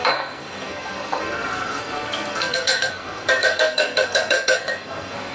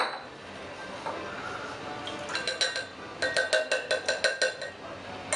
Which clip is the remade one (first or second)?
first